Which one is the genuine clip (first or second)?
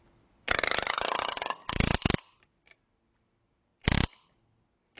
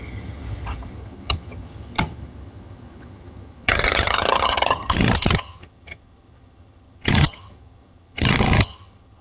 first